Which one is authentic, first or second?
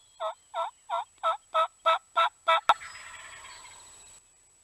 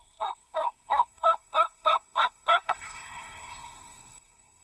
first